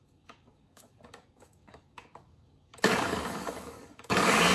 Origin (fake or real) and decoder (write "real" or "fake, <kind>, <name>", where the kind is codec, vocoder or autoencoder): fake, codec, DAC